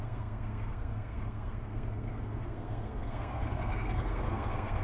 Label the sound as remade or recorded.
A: remade